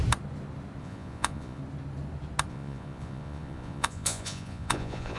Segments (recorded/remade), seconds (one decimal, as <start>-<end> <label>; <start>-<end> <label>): 0.0-0.8 recorded; 0.8-1.6 remade; 1.6-2.5 recorded; 2.5-5.2 remade